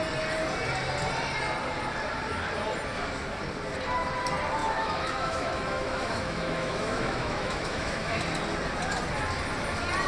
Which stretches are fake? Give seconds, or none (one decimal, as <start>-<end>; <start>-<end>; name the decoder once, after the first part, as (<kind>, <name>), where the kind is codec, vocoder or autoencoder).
4.6-8.2 (autoencoder, DAC-VAE)